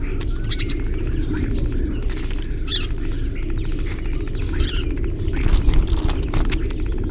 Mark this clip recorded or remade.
recorded